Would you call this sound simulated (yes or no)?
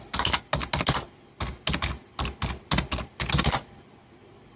no